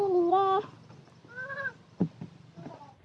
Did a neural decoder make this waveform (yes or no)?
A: no